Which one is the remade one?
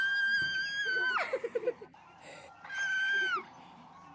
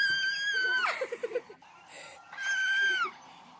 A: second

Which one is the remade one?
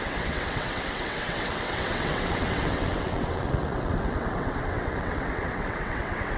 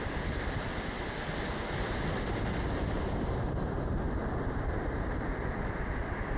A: first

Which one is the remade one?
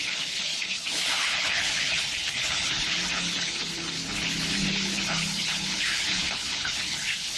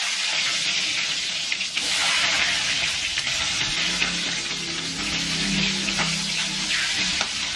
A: first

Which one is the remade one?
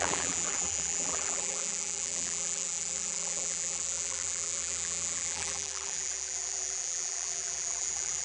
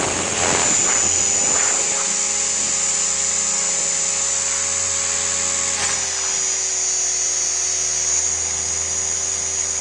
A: first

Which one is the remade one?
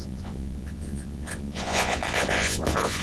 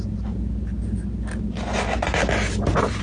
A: first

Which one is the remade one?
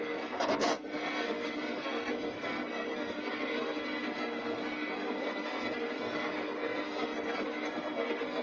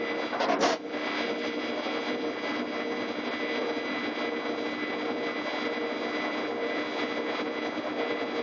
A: first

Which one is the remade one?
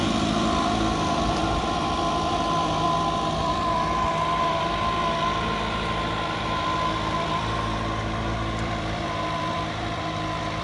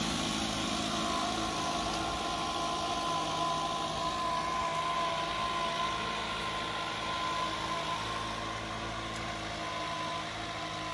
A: first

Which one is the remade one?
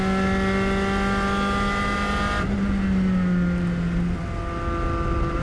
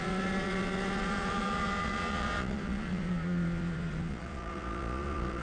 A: second